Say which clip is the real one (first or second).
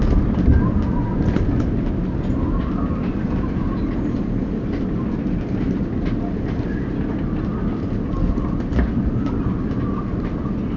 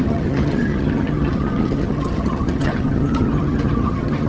first